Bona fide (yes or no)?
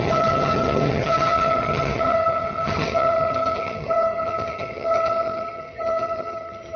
no